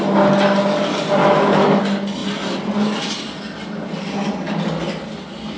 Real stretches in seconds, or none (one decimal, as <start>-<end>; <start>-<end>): 0.0-1.2; 1.8-5.6